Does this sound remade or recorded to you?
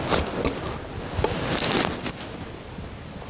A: recorded